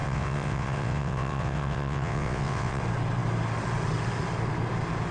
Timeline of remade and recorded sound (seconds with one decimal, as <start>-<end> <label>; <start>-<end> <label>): 0.0-2.8 remade; 2.8-5.1 recorded